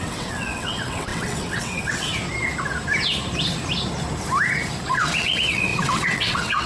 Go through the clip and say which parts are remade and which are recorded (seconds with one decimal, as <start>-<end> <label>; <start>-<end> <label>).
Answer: 0.0-2.1 remade; 2.1-4.9 recorded; 4.9-6.7 remade